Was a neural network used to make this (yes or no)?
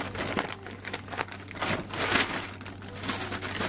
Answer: no